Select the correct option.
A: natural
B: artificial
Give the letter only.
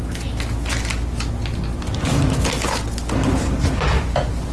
A